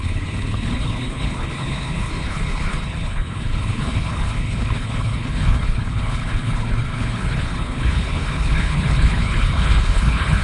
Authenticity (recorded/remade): remade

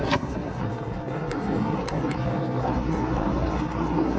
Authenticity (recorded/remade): remade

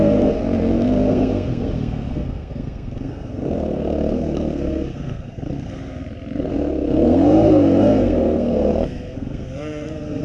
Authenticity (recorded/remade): remade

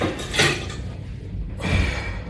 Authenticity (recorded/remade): recorded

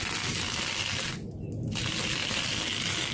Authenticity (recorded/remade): recorded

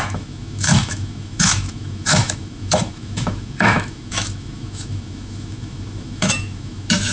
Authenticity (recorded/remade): remade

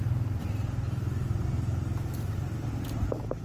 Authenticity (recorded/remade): recorded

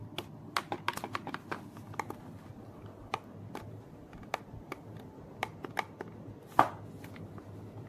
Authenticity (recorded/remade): recorded